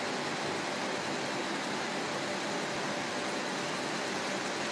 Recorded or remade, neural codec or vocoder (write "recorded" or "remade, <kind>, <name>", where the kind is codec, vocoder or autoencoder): recorded